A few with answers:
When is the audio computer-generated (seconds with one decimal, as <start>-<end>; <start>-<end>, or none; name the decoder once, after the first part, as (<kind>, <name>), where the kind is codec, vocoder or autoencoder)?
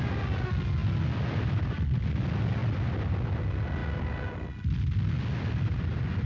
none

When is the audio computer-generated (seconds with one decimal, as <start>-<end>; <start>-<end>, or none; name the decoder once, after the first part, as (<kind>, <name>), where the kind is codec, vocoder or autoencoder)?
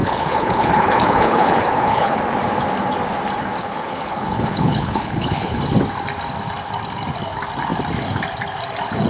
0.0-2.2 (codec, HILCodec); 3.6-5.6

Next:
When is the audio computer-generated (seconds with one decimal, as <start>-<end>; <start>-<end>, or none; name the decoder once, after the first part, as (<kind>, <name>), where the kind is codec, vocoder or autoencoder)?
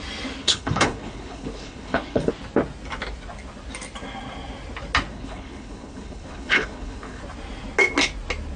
0.4-2.3 (codec, HILCodec); 5.1-7.2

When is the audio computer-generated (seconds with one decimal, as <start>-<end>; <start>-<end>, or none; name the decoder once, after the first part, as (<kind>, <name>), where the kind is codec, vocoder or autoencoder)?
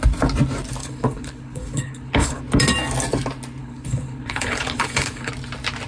0.8-2.4 (codec, HILCodec); 3.6-5.3